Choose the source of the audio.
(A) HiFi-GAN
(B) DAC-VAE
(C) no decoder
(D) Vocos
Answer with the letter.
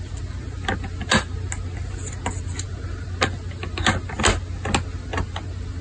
C